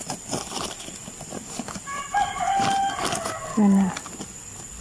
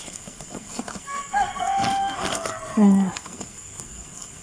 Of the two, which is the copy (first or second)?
second